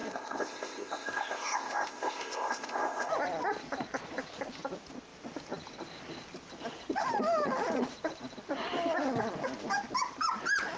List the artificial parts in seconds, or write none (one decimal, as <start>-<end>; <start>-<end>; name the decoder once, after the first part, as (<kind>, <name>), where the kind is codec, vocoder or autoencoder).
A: 0.0-3.1 (codec, ZipCodec)